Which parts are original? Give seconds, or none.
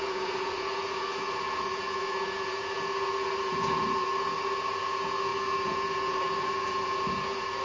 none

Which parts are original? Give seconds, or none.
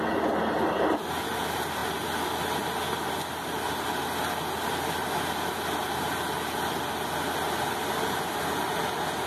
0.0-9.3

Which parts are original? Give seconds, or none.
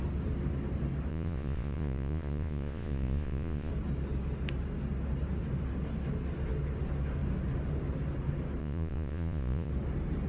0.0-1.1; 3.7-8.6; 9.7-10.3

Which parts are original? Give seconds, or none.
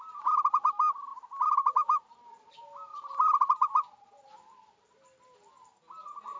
0.0-6.4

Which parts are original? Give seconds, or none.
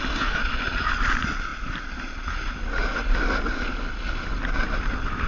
0.0-5.3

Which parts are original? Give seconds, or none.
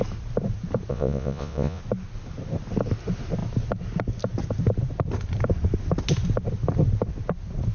0.0-0.9; 1.8-7.7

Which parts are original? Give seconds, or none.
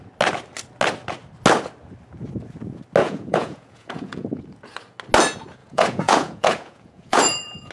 0.0-3.0; 4.4-5.6